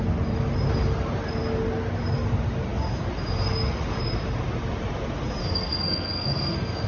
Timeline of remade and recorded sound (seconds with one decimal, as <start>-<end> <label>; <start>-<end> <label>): 0.0-5.4 recorded; 5.4-6.9 remade